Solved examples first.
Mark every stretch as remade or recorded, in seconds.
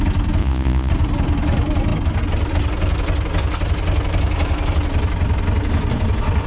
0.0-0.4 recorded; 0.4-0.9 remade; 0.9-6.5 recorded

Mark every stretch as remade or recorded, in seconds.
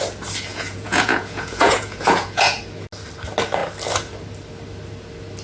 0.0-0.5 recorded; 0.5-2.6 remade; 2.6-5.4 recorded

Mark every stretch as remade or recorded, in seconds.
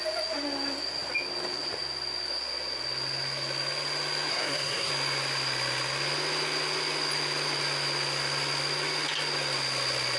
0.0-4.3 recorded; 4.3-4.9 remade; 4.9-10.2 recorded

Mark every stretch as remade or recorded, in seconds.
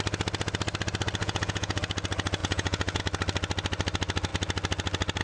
0.0-1.2 recorded; 1.2-1.8 remade; 1.8-2.4 recorded; 2.4-3.0 remade; 3.0-5.2 recorded